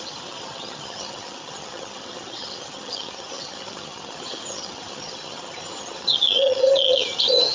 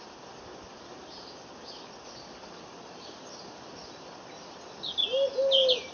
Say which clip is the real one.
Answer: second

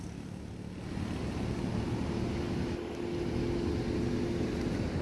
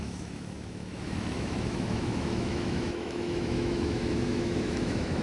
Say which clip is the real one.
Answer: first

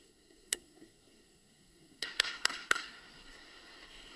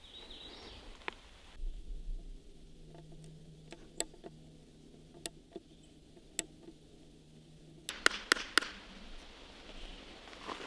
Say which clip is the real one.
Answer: second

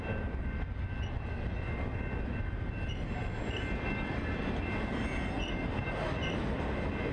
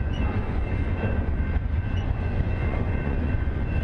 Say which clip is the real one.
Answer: first